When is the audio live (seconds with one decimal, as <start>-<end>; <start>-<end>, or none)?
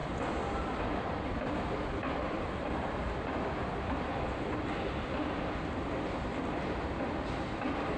0.0-0.8; 3.6-6.2